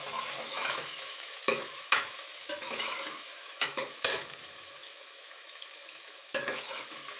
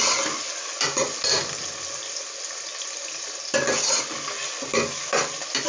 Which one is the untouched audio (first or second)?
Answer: second